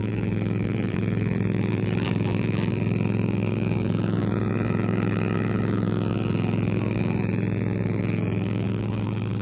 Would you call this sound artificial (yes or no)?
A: yes